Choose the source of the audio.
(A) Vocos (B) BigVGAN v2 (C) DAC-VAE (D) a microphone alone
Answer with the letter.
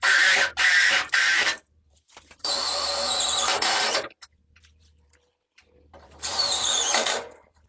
B